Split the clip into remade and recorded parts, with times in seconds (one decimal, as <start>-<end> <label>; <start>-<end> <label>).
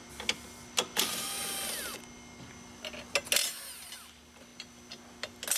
0.0-5.6 recorded